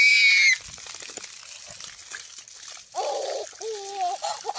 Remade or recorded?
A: recorded